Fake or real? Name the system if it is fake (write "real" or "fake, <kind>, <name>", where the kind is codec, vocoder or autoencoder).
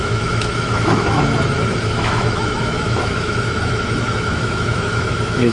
fake, autoencoder, DAC-VAE